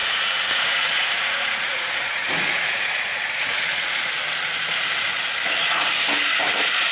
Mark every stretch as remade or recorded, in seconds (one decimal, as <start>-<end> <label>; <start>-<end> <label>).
0.0-4.1 remade; 4.1-6.9 recorded